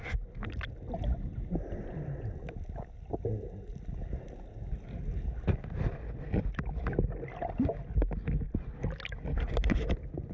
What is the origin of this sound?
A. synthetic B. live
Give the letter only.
B